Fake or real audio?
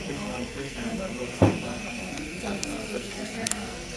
fake